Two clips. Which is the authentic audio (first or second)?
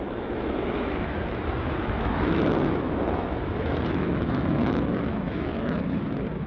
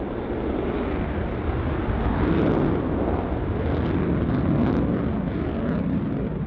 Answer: second